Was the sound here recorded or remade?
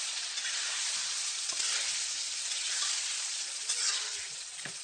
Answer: remade